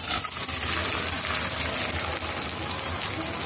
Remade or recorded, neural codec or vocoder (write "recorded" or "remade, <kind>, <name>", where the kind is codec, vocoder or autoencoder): recorded